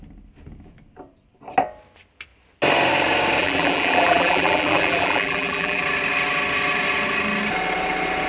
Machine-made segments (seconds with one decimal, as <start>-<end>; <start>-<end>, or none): 3.4-5.8